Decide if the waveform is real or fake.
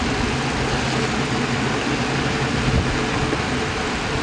real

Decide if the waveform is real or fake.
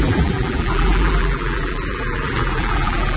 fake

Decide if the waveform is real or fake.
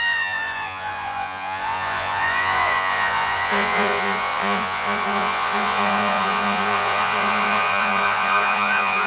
fake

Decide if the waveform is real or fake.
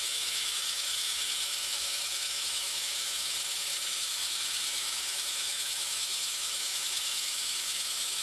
fake